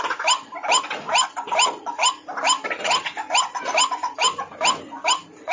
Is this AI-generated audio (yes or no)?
no